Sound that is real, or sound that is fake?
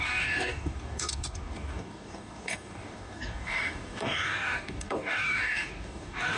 fake